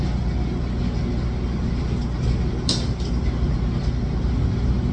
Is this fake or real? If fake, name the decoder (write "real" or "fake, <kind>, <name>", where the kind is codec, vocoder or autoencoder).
real